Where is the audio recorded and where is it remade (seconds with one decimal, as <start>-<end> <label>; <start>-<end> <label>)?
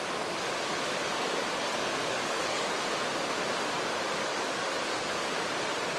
0.0-1.4 recorded; 1.4-2.8 remade; 2.8-4.3 recorded; 4.3-5.3 remade; 5.3-6.0 recorded